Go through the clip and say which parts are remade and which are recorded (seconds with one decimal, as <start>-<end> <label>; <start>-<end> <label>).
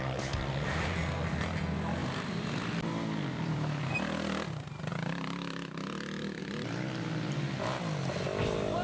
0.0-2.0 recorded; 2.0-3.9 remade; 3.9-8.8 recorded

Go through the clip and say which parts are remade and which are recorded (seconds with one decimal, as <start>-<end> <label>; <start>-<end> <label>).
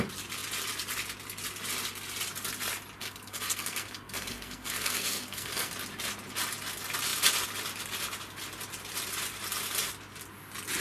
0.0-3.0 recorded; 3.0-5.7 remade; 5.7-10.8 recorded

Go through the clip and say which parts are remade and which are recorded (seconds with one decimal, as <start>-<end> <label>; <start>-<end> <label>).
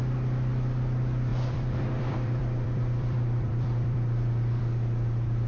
0.0-1.3 recorded; 1.3-4.6 remade; 4.6-5.5 recorded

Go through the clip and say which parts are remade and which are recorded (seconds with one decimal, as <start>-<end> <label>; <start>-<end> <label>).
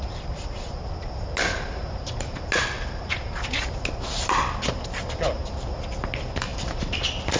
0.0-7.4 recorded